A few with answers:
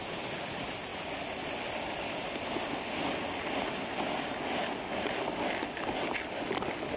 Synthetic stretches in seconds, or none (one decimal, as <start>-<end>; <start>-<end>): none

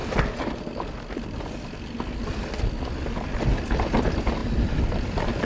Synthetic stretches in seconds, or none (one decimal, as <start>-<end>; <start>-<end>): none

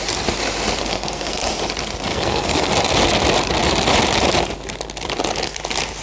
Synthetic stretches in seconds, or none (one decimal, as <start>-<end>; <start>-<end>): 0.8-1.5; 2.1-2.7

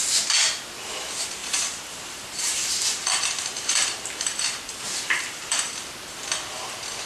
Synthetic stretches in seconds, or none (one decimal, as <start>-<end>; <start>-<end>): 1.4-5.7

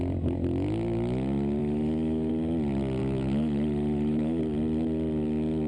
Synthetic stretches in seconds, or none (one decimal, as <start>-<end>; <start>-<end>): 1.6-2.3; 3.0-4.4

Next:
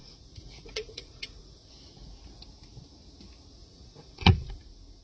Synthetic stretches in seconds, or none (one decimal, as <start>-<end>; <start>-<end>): 0.0-1.7; 3.6-4.5